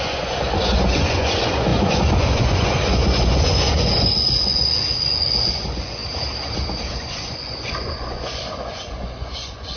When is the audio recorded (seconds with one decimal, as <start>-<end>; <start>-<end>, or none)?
6.0-6.9